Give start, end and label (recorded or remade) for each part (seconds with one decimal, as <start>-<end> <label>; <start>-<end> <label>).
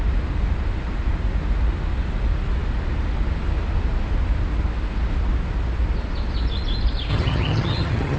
0.0-7.1 recorded; 7.1-8.2 remade